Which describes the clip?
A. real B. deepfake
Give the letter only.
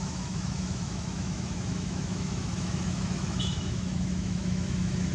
B